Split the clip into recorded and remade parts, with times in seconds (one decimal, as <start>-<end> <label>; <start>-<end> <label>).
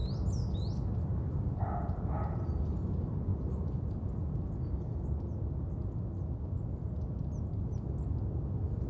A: 0.0-8.9 recorded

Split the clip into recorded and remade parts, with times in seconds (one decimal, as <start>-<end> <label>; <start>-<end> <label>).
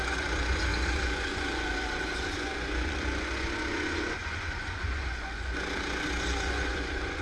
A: 0.0-7.2 remade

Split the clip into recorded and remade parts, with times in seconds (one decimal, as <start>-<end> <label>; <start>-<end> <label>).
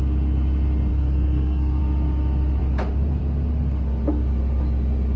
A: 0.0-0.9 recorded; 0.9-1.8 remade; 1.8-5.2 recorded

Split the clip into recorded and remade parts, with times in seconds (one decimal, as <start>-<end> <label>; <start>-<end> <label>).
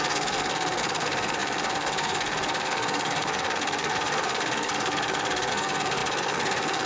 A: 0.0-6.9 remade